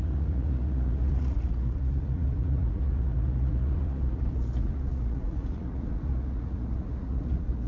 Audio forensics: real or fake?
fake